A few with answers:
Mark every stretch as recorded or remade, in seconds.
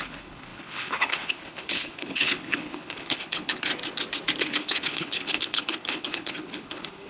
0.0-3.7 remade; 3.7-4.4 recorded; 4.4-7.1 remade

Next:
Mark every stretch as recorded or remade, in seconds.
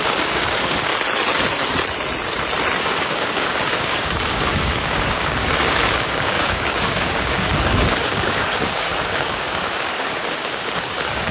0.0-0.9 remade; 0.9-2.8 recorded; 2.8-11.3 remade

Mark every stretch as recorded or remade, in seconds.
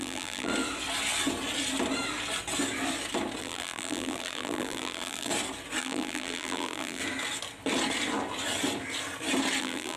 0.0-0.5 remade; 0.5-3.4 recorded; 3.4-5.3 remade; 5.3-5.8 recorded; 5.8-7.0 remade; 7.0-9.6 recorded; 9.6-10.0 remade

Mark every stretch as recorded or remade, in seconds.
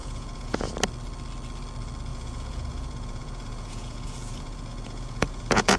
0.0-0.7 remade; 0.7-2.1 recorded; 2.1-5.8 remade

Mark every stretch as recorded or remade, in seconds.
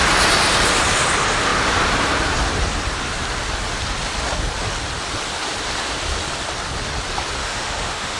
0.0-7.4 recorded; 7.4-8.2 remade